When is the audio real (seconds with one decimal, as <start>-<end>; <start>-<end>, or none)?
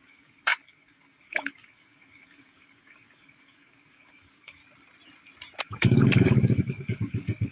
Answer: 4.6-5.6